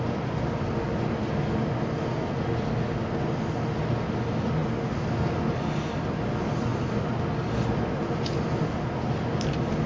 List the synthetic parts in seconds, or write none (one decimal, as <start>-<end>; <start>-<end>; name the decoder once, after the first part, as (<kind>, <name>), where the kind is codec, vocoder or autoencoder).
none